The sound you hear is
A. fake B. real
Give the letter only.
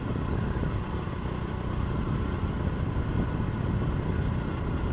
B